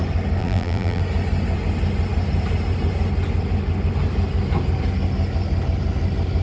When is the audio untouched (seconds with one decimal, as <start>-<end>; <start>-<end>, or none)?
0.0-0.4; 1.0-6.4